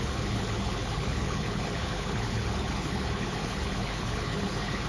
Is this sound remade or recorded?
remade